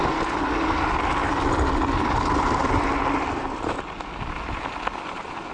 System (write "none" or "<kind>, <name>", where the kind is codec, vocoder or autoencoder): none